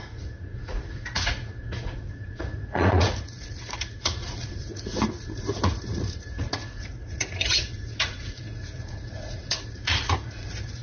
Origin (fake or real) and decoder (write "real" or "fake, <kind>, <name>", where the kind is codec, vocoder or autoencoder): fake, vocoder, Vocos